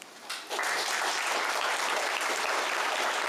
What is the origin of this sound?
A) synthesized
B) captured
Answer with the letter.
B